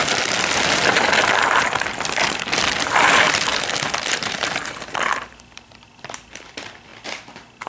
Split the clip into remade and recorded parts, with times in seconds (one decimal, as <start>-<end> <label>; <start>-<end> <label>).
0.0-3.5 remade; 3.5-4.0 recorded; 4.0-6.9 remade; 6.9-7.7 recorded